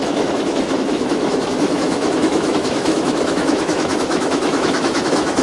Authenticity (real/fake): fake